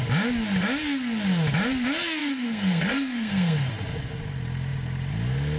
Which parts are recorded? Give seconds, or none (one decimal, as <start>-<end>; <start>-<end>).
0.0-2.2; 3.7-5.6